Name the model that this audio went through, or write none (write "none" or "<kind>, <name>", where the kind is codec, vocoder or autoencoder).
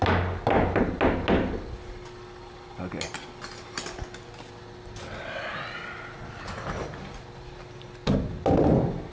none